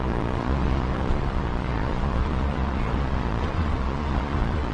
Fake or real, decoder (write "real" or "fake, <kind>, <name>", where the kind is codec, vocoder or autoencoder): fake, vocoder, Vocos